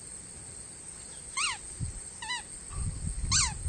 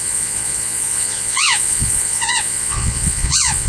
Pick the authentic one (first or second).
first